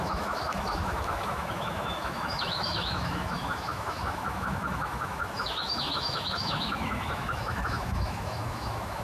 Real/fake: fake